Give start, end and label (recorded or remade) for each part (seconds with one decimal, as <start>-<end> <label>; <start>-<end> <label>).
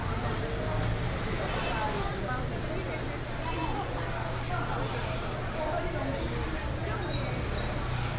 0.0-8.2 recorded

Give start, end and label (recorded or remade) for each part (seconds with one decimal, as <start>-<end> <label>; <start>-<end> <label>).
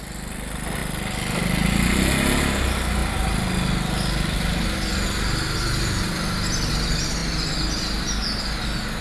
0.0-9.0 recorded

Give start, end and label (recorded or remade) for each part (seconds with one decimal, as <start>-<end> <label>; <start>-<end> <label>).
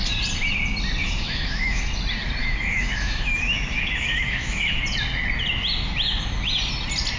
0.0-1.0 recorded; 1.0-1.8 remade; 1.8-2.4 recorded; 2.4-4.8 remade; 4.8-7.2 recorded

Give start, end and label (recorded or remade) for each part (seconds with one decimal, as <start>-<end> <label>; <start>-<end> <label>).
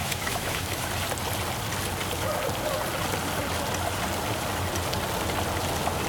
0.0-0.9 remade; 0.9-6.1 recorded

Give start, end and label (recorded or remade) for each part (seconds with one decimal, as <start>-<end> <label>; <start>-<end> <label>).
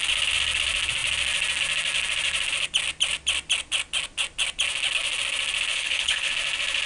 0.0-5.7 recorded; 5.7-6.3 remade; 6.3-6.9 recorded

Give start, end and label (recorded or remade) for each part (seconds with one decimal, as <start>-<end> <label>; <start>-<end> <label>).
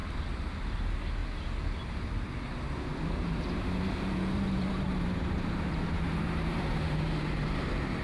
0.0-0.6 remade; 0.6-2.9 recorded; 2.9-8.0 remade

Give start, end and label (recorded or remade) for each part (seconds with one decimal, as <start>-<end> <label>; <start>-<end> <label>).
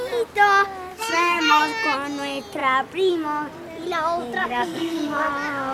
0.0-0.9 recorded; 0.9-1.6 remade; 1.6-4.4 recorded; 4.4-5.3 remade; 5.3-5.7 recorded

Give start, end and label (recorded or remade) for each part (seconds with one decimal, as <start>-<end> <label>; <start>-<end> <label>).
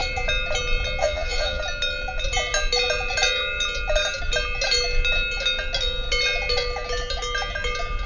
0.0-1.0 recorded; 1.0-1.6 remade; 1.6-8.1 recorded